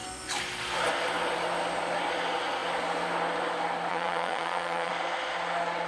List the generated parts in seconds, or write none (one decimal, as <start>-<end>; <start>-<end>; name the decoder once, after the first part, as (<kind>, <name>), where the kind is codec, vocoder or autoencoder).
3.9-4.9 (vocoder, Vocos)

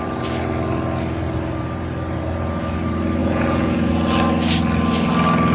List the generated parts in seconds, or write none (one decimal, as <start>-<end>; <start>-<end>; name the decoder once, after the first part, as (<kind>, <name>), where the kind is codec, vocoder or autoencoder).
3.2-3.9 (vocoder, Vocos)

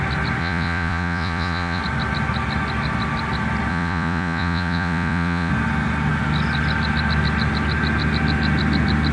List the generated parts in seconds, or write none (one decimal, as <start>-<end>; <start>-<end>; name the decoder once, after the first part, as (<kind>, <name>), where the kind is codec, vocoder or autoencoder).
0.4-1.8 (vocoder, Vocos); 3.7-5.5

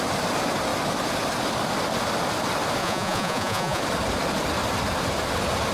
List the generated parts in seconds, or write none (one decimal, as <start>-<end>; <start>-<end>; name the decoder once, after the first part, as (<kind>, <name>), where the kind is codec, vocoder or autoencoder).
2.8-3.8 (vocoder, Vocos)

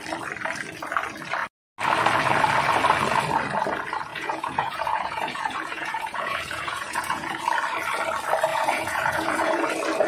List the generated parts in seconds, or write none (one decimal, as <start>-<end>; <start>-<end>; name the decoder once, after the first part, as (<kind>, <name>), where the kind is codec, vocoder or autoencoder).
4.1-7.4 (vocoder, Vocos); 8.5-9.7

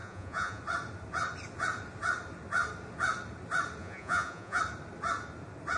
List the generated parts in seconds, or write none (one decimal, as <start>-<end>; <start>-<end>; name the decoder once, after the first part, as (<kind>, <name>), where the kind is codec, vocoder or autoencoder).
0.0-0.6 (vocoder, Vocos); 3.8-4.6

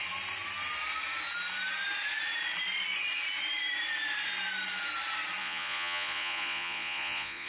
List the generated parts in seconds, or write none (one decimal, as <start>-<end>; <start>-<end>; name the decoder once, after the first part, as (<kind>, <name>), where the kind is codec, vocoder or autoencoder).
5.4-7.5 (vocoder, Vocos)

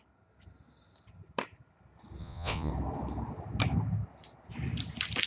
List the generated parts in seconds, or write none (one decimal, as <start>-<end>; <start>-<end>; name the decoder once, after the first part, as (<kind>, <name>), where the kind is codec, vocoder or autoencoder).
2.2-2.7 (vocoder, Vocos)